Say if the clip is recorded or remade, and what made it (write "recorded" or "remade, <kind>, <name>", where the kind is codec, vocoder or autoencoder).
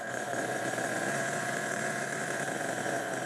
remade, vocoder, Vocos